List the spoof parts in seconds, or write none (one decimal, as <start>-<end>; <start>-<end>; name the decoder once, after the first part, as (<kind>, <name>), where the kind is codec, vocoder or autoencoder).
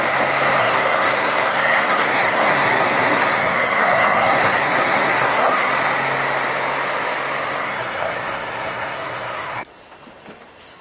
0.6-5.7 (codec, SNAC); 7.6-9.7